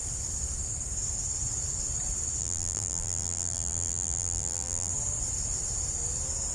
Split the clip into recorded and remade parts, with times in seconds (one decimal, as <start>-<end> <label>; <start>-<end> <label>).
0.0-2.4 recorded; 2.4-4.9 remade; 4.9-6.5 recorded